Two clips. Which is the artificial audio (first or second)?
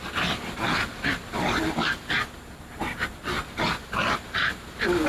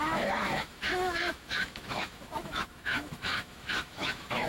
second